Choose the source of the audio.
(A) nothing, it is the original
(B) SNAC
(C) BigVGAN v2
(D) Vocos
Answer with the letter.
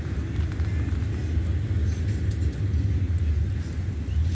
A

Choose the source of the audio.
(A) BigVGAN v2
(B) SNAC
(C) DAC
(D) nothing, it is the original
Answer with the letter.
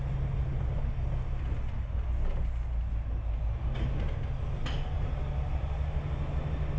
D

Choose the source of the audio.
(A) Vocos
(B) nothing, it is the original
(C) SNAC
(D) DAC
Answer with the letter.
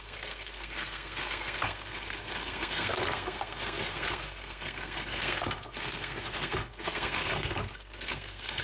C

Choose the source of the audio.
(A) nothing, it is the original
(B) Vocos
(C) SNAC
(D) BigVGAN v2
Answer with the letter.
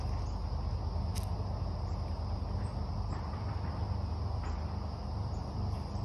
A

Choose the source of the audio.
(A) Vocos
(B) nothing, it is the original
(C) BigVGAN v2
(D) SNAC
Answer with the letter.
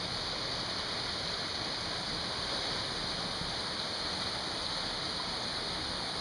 B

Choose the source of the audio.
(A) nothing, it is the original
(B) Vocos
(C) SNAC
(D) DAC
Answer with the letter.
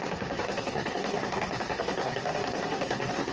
C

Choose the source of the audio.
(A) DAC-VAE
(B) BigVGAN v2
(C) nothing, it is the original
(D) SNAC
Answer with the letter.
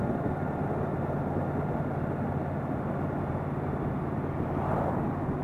C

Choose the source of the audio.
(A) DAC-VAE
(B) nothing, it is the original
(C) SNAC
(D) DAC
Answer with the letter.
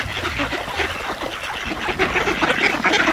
B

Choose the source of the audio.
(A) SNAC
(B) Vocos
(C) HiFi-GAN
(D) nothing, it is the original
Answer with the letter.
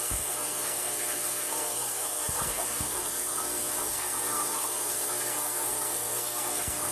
A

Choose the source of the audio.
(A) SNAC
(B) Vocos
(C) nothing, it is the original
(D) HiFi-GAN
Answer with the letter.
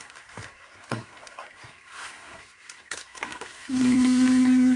A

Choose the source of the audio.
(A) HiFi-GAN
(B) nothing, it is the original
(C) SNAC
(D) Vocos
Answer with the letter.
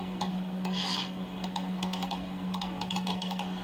C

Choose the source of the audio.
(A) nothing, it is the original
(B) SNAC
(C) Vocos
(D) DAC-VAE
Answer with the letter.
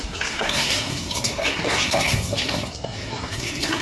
B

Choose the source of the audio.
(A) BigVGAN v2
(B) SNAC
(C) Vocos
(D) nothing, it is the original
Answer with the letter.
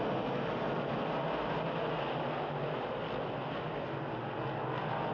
D